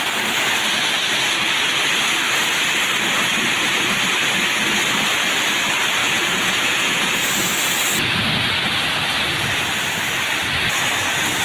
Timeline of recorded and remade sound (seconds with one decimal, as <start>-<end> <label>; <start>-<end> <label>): 0.0-6.0 recorded; 6.0-7.0 remade; 7.0-11.4 recorded